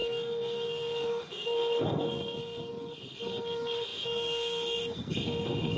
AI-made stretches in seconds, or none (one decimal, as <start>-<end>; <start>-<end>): 0.0-5.8